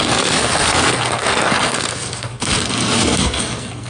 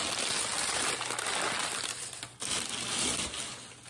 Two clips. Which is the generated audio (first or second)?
first